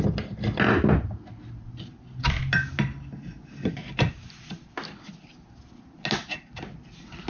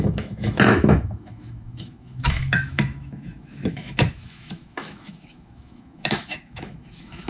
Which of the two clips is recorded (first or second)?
first